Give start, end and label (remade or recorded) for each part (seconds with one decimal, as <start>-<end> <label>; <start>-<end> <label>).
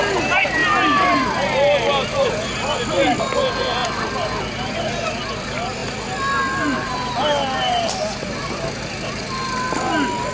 0.0-10.3 recorded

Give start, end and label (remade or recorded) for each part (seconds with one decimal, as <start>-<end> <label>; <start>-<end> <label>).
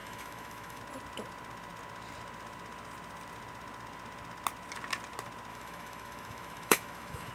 0.0-0.8 remade; 0.8-5.5 recorded; 5.5-7.3 remade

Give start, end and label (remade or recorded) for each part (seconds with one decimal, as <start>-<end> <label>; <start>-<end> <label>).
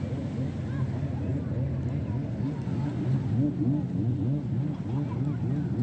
0.0-5.8 recorded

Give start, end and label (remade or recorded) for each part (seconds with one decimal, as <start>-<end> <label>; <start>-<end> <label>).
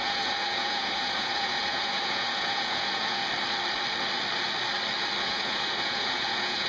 0.0-3.2 remade; 3.2-5.2 recorded; 5.2-6.7 remade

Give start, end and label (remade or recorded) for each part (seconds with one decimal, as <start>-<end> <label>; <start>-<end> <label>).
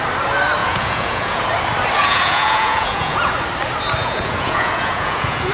0.0-0.6 recorded; 0.6-1.4 remade; 1.4-2.0 recorded; 2.0-3.3 remade; 3.3-4.0 recorded; 4.0-5.5 remade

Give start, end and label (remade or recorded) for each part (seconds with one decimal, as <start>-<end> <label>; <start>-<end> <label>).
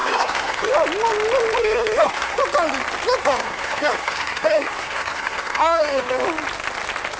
0.0-0.7 remade; 0.7-1.6 recorded; 1.6-2.4 remade; 2.4-3.2 recorded; 3.2-6.2 remade; 6.2-7.2 recorded